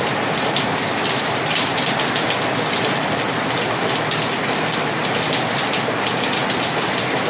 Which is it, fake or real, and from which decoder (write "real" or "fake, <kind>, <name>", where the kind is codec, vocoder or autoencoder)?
real